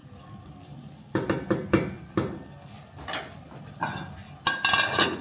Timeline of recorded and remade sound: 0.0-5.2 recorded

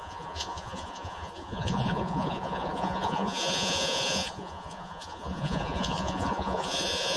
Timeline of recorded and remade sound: 0.0-7.2 remade

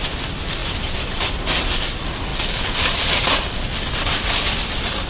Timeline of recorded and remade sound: 0.0-0.6 recorded; 0.6-1.3 remade; 1.3-2.3 recorded; 2.3-4.3 remade; 4.3-5.1 recorded

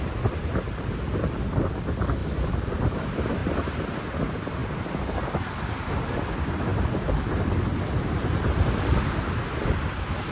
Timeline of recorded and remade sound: 0.0-2.2 recorded; 2.2-2.8 remade; 2.8-6.7 recorded; 6.7-7.4 remade; 7.4-10.3 recorded

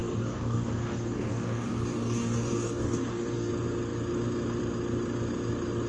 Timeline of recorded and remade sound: 0.0-3.5 remade; 3.5-5.9 recorded